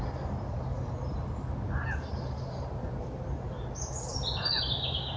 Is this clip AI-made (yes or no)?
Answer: no